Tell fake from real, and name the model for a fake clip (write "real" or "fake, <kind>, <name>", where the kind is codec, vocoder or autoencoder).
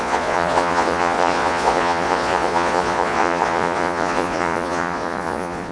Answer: fake, vocoder, Vocos